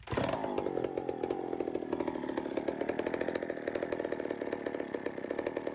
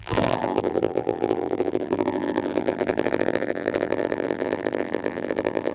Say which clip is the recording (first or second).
first